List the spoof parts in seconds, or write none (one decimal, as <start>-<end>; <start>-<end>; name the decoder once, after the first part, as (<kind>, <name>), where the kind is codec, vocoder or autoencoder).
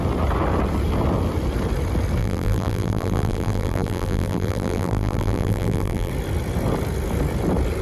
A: 2.2-6.1 (vocoder, BigVGAN v2)